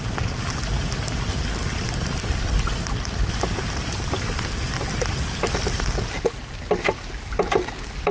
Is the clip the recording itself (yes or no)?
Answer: yes